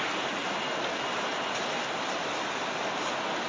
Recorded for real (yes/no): yes